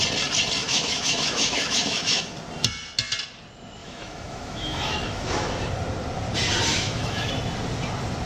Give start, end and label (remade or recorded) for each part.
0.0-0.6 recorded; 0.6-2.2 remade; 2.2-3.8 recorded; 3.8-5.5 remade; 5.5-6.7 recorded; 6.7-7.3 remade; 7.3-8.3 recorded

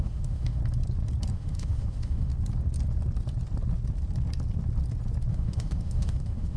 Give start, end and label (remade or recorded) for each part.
0.0-0.6 remade; 0.6-1.3 recorded; 1.3-2.3 remade; 2.3-5.3 recorded; 5.3-6.6 remade

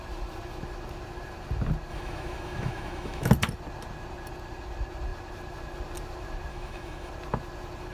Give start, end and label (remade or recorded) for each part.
0.0-1.9 recorded; 1.9-3.3 remade; 3.3-6.5 recorded; 6.5-7.1 remade; 7.1-7.9 recorded

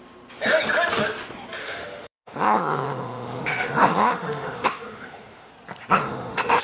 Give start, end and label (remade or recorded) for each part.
0.0-1.6 recorded; 1.6-5.5 remade; 5.5-6.0 recorded; 6.0-6.6 remade

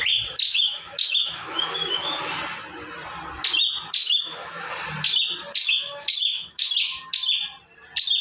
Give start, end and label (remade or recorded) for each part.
0.0-0.5 recorded; 0.5-2.2 remade; 2.2-4.0 recorded; 4.0-4.7 remade; 4.7-5.6 recorded; 5.6-7.0 remade; 7.0-8.2 recorded

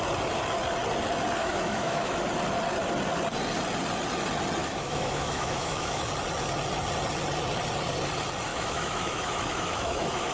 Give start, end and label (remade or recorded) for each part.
0.0-1.4 recorded; 1.4-2.2 remade; 2.2-4.6 recorded; 4.6-6.0 remade; 6.0-8.5 recorded; 8.5-10.3 remade

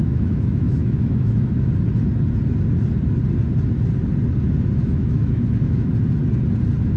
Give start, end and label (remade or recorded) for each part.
0.0-1.7 remade; 1.7-4.8 recorded; 4.8-5.9 remade; 5.9-7.0 recorded